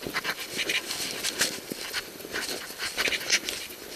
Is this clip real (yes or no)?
no